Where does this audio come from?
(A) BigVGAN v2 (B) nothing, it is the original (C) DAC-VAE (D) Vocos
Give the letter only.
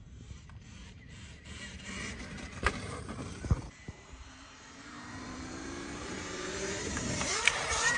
A